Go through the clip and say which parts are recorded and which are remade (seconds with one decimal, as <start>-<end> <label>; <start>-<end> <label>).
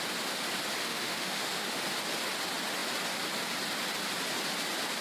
0.0-0.8 recorded; 0.8-1.8 remade; 1.8-5.0 recorded